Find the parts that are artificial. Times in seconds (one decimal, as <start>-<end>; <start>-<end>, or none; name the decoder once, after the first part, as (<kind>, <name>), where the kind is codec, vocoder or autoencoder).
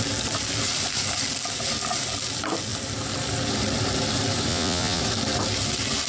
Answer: 4.5-5.0 (vocoder, Vocos)